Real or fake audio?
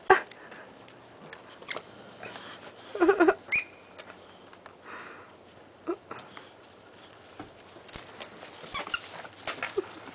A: real